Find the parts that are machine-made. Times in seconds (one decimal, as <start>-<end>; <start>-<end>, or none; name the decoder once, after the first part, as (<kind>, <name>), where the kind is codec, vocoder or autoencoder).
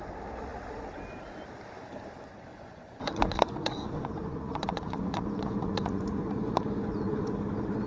2.5-7.2 (vocoder, Vocos)